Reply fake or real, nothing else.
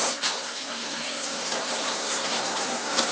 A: fake